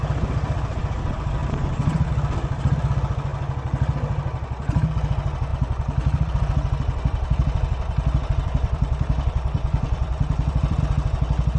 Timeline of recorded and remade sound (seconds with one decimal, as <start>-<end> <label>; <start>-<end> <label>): 0.0-1.4 recorded; 1.4-2.1 remade; 2.1-5.5 recorded; 5.5-10.8 remade; 10.8-11.6 recorded